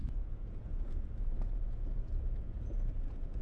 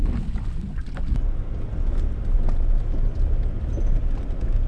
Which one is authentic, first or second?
second